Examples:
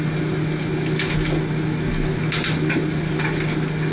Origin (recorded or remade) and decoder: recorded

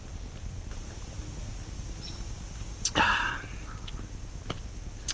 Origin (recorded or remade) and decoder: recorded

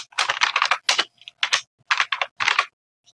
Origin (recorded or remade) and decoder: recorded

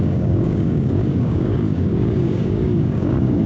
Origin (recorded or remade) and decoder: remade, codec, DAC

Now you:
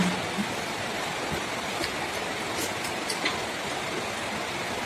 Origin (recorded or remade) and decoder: recorded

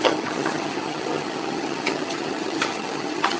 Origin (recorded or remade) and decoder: remade, vocoder, HiFi-GAN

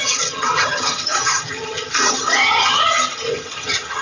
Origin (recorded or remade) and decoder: remade, vocoder, HiFi-GAN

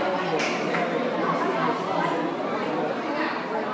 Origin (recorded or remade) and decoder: recorded